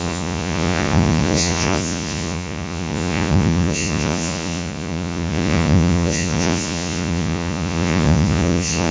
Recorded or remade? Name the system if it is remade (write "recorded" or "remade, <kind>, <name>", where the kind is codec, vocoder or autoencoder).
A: remade, vocoder, Vocos